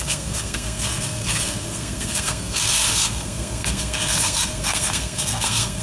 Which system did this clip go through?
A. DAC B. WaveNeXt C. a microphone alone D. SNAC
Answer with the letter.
D